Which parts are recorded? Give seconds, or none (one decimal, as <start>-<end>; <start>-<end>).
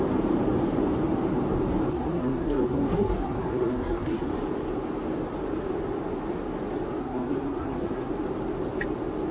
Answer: 0.0-1.9; 4.3-7.0; 8.1-9.3